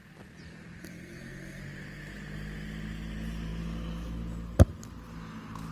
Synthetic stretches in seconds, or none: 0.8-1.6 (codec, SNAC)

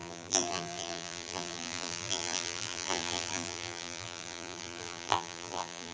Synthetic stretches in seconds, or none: 0.0-5.9 (vocoder, BigVGAN v2)

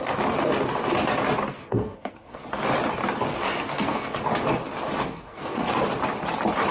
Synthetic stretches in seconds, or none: 1.5-2.4 (codec, SNAC); 3.3-4.2; 5.1-5.7

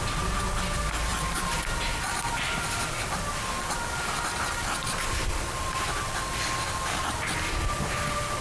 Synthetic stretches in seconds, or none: none

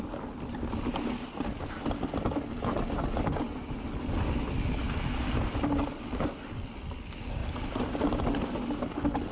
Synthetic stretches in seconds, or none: 7.4-8.0 (vocoder, BigVGAN v2)